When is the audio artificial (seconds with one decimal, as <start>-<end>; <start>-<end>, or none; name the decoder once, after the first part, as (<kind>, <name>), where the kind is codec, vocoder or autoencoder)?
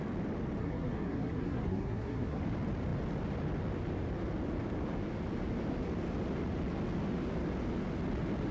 0.6-2.4 (codec, SNAC)